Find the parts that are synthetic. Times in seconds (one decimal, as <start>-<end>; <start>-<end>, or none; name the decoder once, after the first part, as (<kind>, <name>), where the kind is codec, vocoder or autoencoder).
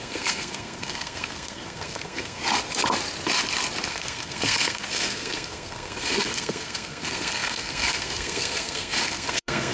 0.0-2.4 (codec, SNAC); 3.9-9.7